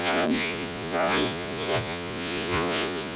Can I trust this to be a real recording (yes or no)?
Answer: no